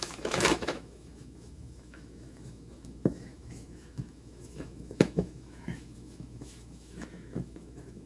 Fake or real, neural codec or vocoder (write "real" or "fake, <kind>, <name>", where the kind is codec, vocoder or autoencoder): fake, autoencoder, DAC-VAE